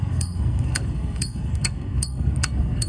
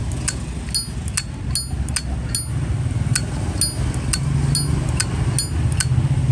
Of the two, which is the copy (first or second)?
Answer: first